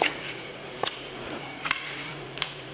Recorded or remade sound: remade